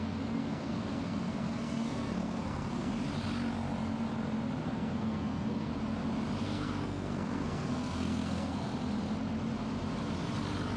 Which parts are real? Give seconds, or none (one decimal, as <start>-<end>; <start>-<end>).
2.9-4.6; 5.7-6.4; 8.7-10.8